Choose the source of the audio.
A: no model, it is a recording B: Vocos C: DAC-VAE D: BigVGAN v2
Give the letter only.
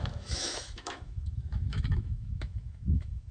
C